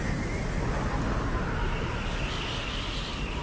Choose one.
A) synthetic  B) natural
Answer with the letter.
B